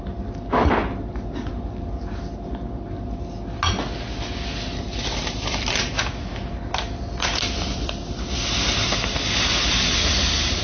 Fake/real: real